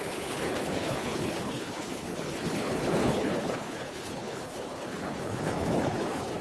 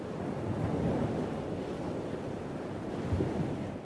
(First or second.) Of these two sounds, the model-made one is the first